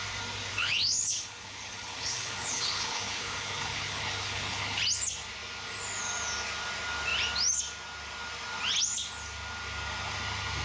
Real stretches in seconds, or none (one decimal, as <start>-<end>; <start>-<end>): 0.0-0.5; 4.8-10.6